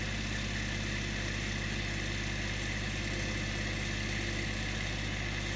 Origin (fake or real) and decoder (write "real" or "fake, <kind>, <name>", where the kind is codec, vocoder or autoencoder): real